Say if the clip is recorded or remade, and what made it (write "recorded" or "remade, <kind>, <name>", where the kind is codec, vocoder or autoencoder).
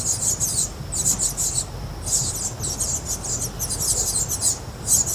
recorded